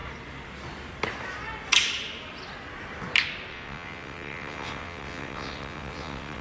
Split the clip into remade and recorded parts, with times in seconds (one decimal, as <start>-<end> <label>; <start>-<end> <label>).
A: 0.0-3.5 recorded; 3.5-6.4 remade